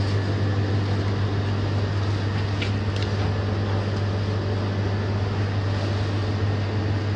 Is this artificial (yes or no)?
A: no